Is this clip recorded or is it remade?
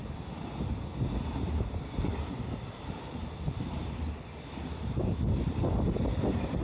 recorded